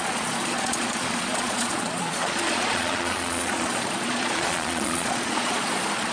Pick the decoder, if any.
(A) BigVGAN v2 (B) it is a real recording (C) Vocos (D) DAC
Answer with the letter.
C